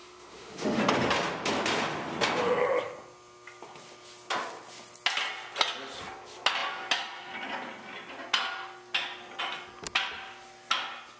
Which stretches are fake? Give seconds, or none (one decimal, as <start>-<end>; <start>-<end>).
0.0-0.8